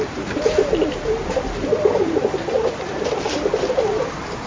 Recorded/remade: recorded